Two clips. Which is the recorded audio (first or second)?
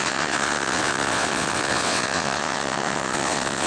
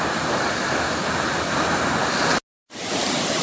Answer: second